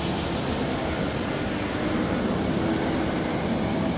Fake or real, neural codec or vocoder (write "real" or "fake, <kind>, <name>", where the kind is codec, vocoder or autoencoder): real